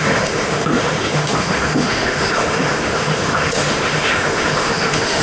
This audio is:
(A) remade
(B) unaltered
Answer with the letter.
A